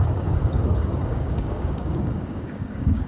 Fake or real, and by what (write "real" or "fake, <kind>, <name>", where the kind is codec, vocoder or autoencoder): fake, codec, DAC